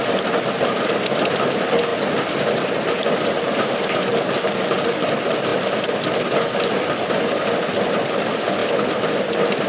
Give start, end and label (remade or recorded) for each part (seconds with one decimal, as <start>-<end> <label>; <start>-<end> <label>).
0.0-4.1 recorded; 4.1-4.7 remade; 4.7-5.5 recorded; 5.5-7.4 remade; 7.4-9.7 recorded